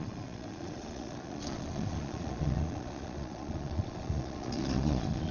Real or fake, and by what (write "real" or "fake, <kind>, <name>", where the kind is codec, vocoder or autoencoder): fake, vocoder, Vocos